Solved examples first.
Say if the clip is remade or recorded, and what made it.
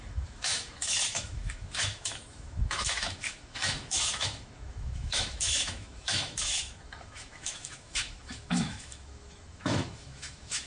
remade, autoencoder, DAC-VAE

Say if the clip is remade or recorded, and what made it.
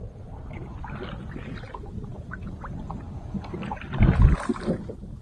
recorded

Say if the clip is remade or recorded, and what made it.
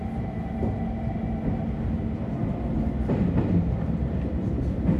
recorded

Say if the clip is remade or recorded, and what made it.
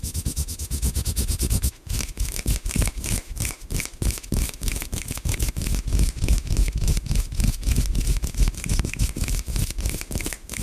remade, autoencoder, DAC-VAE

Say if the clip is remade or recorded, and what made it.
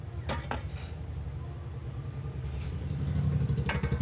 recorded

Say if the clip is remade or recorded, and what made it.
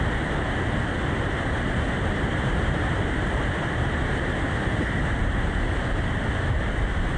recorded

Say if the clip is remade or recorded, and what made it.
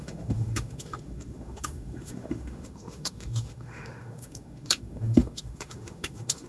remade, autoencoder, DAC-VAE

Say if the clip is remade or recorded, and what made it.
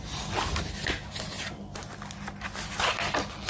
recorded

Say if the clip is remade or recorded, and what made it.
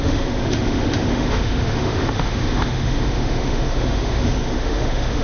remade, autoencoder, DAC-VAE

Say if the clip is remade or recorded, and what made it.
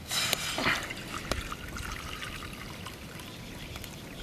recorded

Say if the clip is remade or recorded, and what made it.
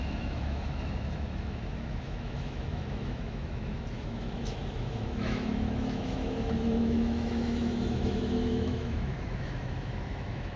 remade, autoencoder, DAC-VAE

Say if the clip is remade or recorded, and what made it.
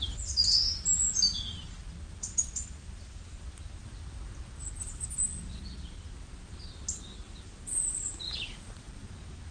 recorded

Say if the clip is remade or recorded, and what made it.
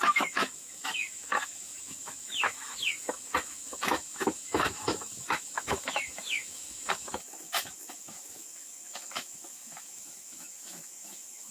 remade, autoencoder, DAC-VAE